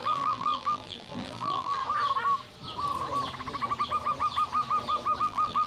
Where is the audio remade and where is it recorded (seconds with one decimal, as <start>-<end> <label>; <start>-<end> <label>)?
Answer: 0.0-1.8 remade; 1.8-5.2 recorded; 5.2-5.7 remade